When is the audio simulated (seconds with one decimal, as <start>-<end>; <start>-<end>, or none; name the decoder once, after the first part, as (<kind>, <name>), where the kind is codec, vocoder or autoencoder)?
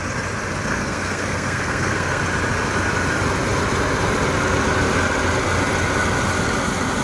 0.7-2.2 (codec, SNAC)